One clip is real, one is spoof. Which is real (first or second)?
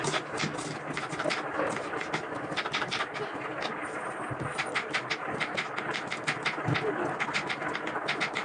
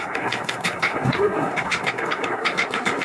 first